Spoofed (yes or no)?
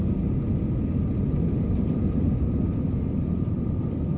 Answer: no